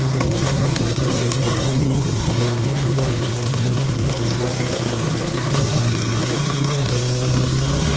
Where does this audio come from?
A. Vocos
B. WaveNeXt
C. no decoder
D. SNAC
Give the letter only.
D